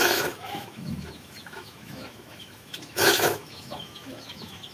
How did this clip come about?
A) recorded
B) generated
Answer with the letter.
B